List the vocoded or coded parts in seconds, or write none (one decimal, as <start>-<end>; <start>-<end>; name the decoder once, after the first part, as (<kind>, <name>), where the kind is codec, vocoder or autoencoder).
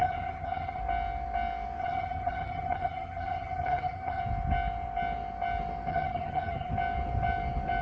0.0-0.8 (vocoder, HiFi-GAN); 1.8-4.2; 5.9-6.7